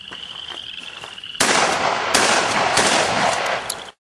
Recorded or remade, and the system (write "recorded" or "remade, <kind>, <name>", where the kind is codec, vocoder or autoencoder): recorded